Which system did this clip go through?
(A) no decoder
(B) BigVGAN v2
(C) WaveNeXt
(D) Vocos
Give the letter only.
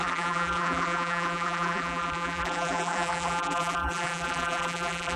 B